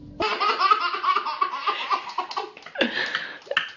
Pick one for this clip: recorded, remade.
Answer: recorded